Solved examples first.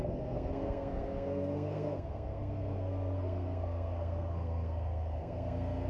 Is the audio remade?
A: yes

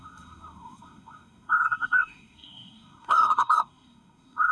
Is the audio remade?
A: yes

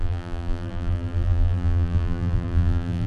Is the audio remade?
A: yes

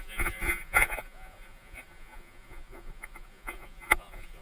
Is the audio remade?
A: yes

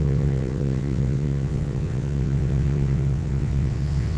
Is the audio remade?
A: yes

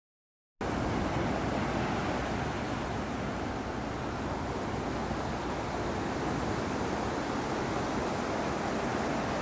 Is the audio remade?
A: no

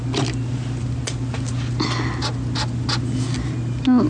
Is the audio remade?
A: no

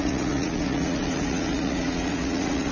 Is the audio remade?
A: yes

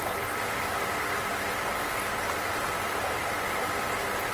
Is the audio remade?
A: no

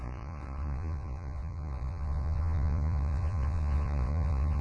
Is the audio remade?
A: yes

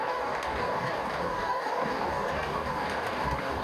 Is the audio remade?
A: yes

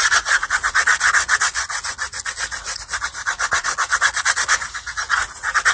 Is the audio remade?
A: yes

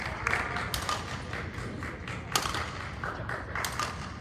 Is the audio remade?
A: no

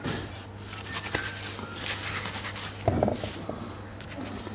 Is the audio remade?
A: no